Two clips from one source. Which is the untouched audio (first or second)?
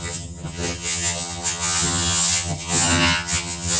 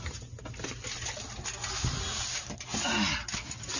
second